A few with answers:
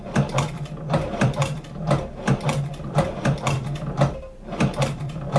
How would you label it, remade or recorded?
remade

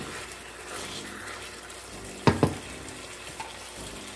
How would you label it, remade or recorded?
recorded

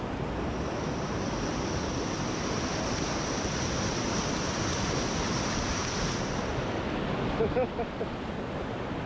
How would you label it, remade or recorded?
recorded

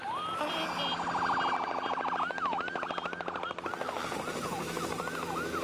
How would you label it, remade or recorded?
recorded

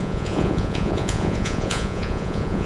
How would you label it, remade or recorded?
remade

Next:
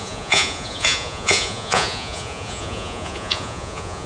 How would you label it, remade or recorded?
remade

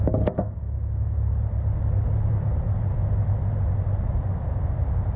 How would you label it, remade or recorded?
recorded